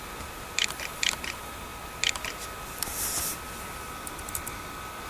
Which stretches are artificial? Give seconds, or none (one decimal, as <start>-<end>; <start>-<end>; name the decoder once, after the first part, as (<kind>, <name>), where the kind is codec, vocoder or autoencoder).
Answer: 0.0-1.7 (vocoder, BigVGAN v2)